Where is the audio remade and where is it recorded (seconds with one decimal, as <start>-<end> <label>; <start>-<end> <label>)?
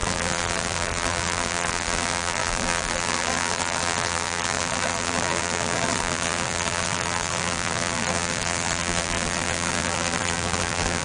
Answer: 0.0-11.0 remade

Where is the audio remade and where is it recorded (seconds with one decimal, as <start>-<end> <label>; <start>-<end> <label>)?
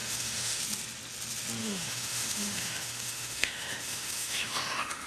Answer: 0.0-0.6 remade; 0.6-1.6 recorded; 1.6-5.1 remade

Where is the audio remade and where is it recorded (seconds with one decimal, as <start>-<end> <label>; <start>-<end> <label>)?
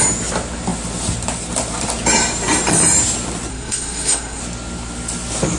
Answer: 0.0-3.5 recorded; 3.5-4.4 remade; 4.4-5.6 recorded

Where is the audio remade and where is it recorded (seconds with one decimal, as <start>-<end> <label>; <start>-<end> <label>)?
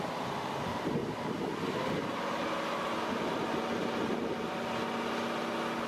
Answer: 0.0-5.9 recorded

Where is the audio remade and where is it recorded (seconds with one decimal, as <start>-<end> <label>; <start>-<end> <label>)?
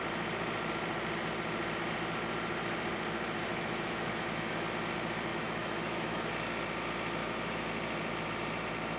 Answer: 0.0-3.5 recorded; 3.5-4.5 remade; 4.5-5.3 recorded; 5.3-6.2 remade; 6.2-7.2 recorded; 7.2-7.7 remade; 7.7-9.0 recorded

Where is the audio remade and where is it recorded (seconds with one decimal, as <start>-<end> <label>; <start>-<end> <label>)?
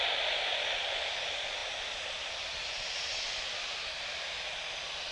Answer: 0.0-5.1 recorded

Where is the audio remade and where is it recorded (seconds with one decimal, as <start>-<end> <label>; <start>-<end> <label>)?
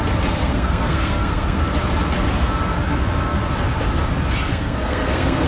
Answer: 0.0-0.4 recorded; 0.4-1.6 remade; 1.6-4.5 recorded; 4.5-5.5 remade